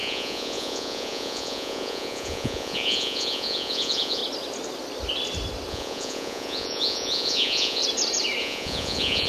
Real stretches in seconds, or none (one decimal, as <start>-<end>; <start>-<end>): 4.2-5.7; 7.8-8.4